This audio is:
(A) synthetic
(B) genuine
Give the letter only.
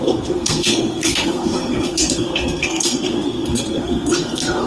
A